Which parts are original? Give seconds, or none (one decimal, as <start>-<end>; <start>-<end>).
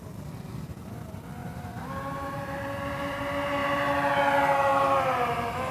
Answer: 0.0-1.4; 3.2-3.6; 4.1-5.7